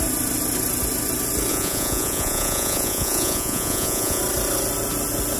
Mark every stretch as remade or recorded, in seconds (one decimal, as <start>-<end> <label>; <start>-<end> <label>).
0.0-1.5 recorded; 1.5-4.2 remade; 4.2-5.4 recorded